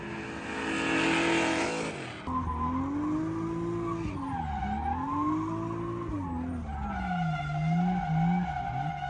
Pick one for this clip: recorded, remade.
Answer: recorded